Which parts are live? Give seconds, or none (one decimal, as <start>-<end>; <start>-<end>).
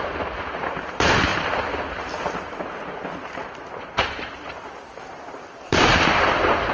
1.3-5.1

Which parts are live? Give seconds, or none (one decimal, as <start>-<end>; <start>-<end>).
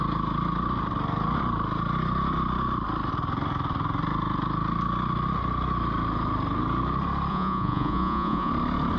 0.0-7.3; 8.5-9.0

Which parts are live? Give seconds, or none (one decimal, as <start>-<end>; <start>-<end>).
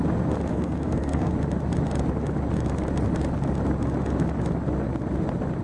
0.0-0.5; 1.3-5.6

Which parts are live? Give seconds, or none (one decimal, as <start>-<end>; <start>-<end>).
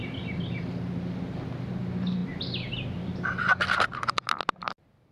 0.0-5.1